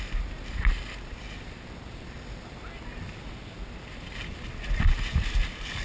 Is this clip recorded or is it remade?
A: recorded